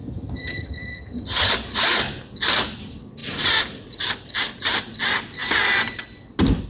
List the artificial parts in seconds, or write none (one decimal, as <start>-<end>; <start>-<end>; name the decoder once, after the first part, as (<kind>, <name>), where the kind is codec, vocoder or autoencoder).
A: 0.0-1.5 (vocoder, HiFi-GAN)